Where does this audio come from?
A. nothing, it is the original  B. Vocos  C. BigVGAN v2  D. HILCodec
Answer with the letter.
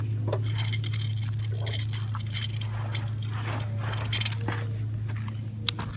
A